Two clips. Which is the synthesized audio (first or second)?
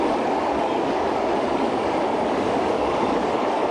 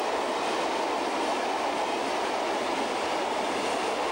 first